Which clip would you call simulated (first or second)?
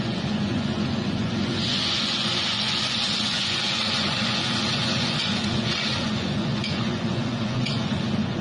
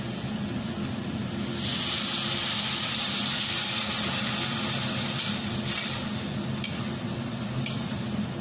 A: first